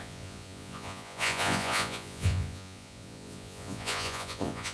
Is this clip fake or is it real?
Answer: fake